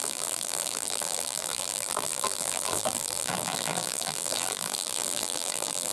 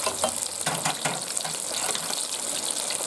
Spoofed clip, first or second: first